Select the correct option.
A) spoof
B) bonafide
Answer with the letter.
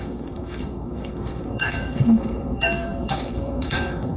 A